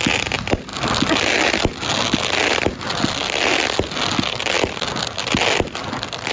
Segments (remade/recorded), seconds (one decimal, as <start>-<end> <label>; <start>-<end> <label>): 0.0-6.3 recorded